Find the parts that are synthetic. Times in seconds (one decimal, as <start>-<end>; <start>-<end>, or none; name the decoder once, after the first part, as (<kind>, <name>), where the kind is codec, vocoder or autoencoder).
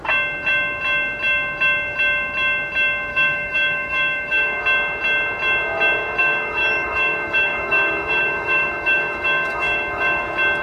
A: 3.1-4.6 (autoencoder, DAC-VAE); 6.2-10.2